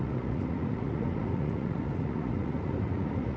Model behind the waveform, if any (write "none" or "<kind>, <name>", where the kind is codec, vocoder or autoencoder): vocoder, Vocos